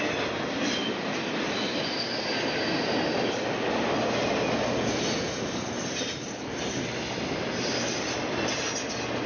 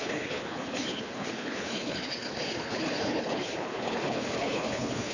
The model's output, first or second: second